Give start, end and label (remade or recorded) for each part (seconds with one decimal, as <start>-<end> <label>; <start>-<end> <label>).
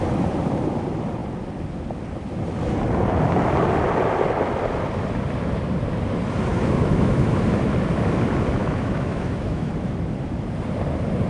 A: 0.0-6.5 recorded; 6.5-7.4 remade; 7.4-8.6 recorded; 8.6-9.7 remade; 9.7-11.3 recorded